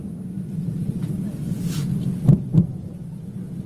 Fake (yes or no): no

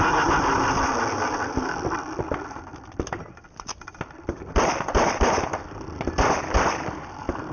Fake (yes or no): no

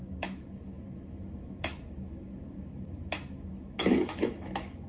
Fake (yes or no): yes